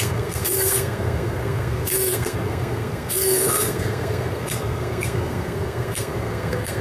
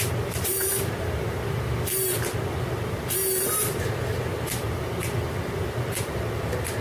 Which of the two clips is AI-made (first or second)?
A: first